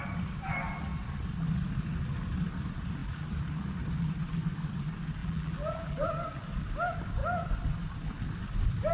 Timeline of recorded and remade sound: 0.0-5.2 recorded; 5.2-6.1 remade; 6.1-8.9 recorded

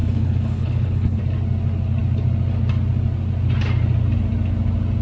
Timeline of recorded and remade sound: 0.0-1.2 remade; 1.2-5.0 recorded

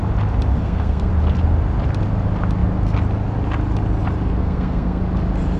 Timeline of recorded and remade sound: 0.0-0.5 recorded; 0.5-1.1 remade; 1.1-4.4 recorded; 4.4-5.0 remade; 5.0-5.6 recorded

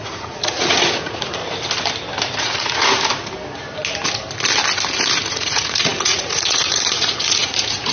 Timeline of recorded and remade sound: 0.0-1.4 remade; 1.4-2.4 recorded; 2.4-2.8 remade; 2.8-5.3 recorded; 5.3-7.9 remade

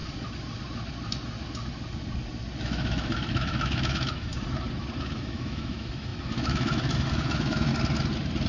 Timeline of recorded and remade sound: 0.0-2.6 recorded; 2.6-4.3 remade; 4.3-5.0 recorded; 5.0-7.7 remade; 7.7-8.5 recorded

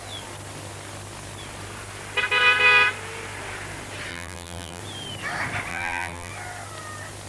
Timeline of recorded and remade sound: 0.0-4.1 recorded; 4.1-4.8 remade; 4.8-5.7 recorded; 5.7-6.3 remade; 6.3-7.3 recorded

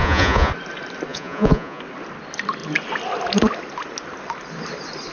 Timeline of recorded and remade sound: 0.0-0.5 remade; 0.5-1.1 recorded; 1.1-1.8 remade; 1.8-5.1 recorded

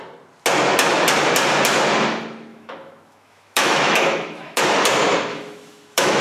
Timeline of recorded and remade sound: 0.0-2.5 recorded; 2.5-4.6 remade; 4.6-5.3 recorded; 5.3-6.2 remade